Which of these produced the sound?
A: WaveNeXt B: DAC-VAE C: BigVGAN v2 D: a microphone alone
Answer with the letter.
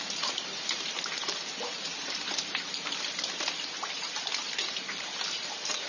C